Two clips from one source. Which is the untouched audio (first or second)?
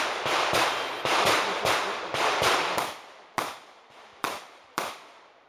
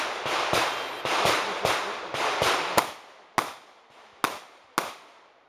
second